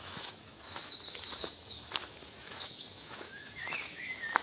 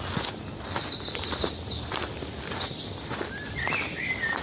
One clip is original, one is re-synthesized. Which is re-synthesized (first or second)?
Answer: first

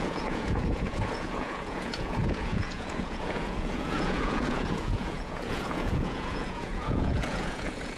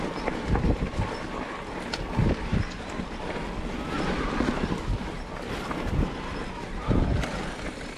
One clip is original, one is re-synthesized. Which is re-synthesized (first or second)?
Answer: first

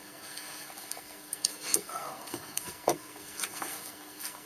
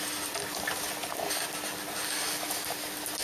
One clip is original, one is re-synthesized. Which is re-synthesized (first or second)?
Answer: first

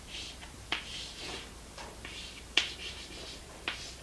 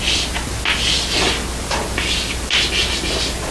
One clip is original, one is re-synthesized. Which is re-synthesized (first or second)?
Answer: first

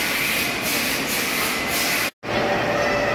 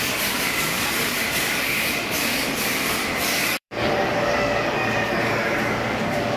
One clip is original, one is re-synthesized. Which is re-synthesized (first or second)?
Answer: second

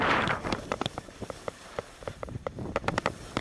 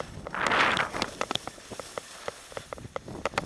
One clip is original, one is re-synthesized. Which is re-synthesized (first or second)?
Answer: first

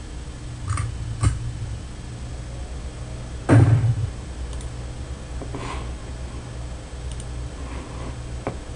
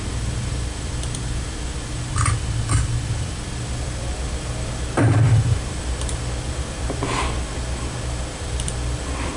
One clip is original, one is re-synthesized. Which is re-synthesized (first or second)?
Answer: second